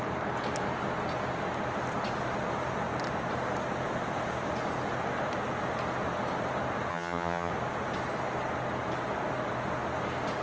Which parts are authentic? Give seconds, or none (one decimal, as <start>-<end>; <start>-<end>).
0.0-6.9; 7.5-10.4